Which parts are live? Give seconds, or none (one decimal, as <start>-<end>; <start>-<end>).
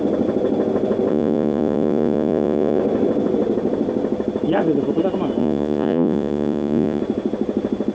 0.0-1.1; 2.8-5.4; 7.0-7.9